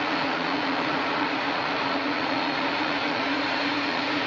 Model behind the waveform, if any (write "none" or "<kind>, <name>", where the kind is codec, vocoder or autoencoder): vocoder, Vocos